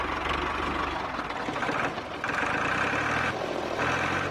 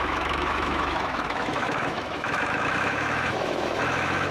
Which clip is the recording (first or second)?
first